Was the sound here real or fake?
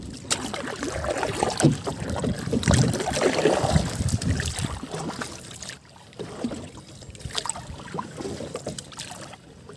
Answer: real